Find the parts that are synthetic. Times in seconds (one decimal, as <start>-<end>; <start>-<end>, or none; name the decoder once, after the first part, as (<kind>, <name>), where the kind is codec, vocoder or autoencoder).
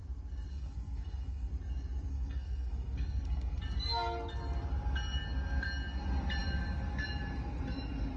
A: 0.5-1.5 (codec, SNAC); 2.1-3.6